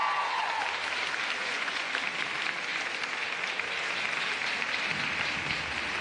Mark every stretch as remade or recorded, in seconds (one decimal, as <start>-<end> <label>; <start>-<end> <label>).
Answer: 0.0-0.6 remade; 0.6-1.4 recorded; 1.4-1.9 remade; 1.9-6.0 recorded